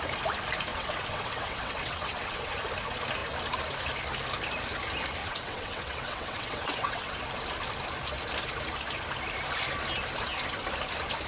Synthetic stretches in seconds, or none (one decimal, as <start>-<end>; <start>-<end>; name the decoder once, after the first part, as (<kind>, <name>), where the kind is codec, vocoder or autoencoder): 0.7-2.5 (vocoder, WaveNeXt); 5.2-7.2